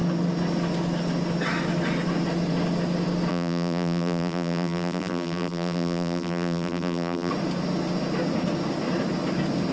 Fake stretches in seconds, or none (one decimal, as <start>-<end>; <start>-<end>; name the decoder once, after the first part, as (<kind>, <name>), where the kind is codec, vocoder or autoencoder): 3.3-7.3 (vocoder, BigVGAN v2)